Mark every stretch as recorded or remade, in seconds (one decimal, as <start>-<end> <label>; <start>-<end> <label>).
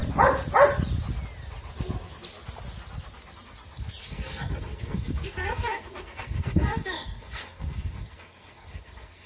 0.0-4.0 recorded; 4.0-9.3 remade